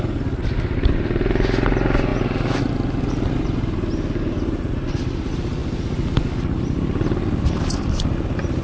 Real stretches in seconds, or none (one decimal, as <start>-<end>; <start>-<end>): 0.0-8.6